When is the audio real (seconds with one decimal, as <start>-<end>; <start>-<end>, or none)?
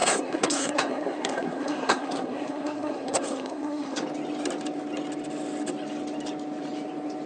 4.0-7.3